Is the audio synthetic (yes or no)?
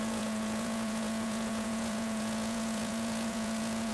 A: yes